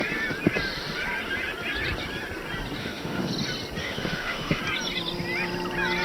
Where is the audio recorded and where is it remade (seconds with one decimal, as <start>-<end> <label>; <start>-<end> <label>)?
0.0-2.8 recorded; 2.8-3.3 remade; 3.3-3.8 recorded; 3.8-4.6 remade; 4.6-6.0 recorded